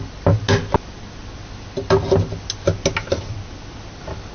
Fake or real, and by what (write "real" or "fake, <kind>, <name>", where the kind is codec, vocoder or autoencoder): real